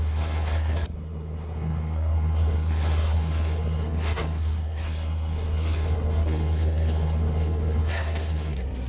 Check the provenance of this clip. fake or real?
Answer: fake